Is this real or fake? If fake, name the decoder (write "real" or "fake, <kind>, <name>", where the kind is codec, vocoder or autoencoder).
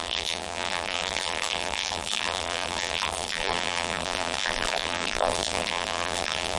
fake, vocoder, BigVGAN v2